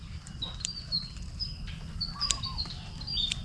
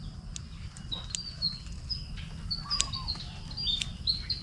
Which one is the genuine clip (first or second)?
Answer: second